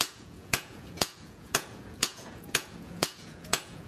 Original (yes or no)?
no